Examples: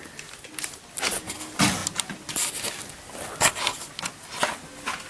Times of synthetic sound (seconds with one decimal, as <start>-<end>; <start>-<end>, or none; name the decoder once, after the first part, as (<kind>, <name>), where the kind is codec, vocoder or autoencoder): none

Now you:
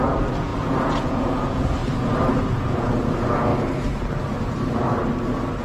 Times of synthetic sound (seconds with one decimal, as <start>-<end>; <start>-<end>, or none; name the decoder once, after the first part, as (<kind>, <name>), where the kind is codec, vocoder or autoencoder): 0.0-1.8 (vocoder, Vocos); 2.3-3.5

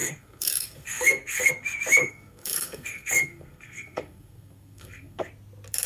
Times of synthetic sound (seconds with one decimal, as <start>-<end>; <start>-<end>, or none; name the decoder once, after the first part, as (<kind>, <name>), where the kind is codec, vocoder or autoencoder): 0.0-1.5 (codec, SNAC); 2.0-5.3

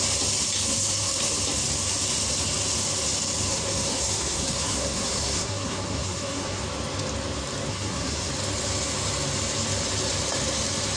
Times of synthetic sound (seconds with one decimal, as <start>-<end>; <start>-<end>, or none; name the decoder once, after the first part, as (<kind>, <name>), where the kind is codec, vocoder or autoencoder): 0.7-1.2 (codec, SNAC); 3.5-6.6; 7.7-8.3

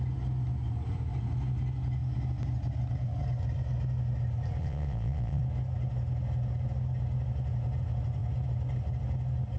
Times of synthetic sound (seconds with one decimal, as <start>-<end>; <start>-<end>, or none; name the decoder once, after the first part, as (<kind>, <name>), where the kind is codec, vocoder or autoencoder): 4.6-5.4 (vocoder, Vocos)

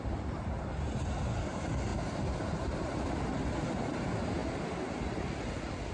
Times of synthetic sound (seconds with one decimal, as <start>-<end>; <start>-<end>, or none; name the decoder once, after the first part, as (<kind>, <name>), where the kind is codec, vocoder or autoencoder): none

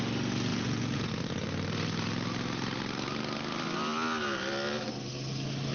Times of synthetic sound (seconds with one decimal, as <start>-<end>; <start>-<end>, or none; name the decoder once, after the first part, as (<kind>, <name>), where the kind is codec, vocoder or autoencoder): 0.5-1.1 (vocoder, Vocos)

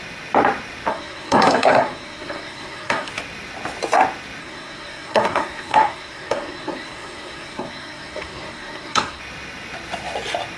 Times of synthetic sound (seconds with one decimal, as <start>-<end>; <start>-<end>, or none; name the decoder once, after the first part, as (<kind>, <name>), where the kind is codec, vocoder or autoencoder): 0.9-3.1 (codec, SNAC); 4.4-9.2